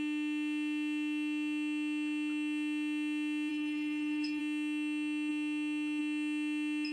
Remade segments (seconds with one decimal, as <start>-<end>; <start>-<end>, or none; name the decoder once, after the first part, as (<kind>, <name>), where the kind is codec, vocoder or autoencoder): 3.5-4.4 (codec, SNAC)